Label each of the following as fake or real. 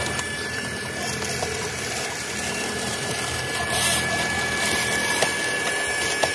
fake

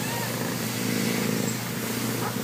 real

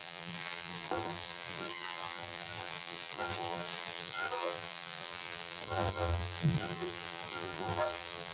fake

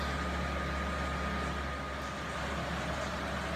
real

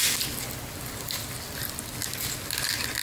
real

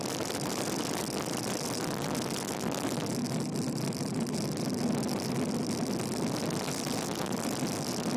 real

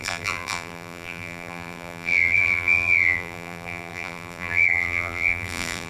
fake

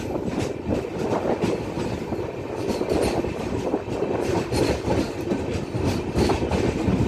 real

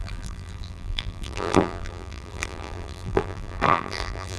fake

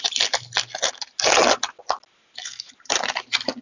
real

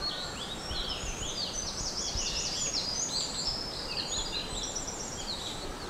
fake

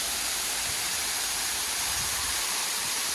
fake